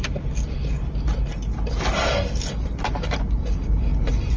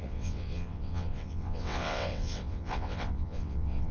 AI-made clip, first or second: second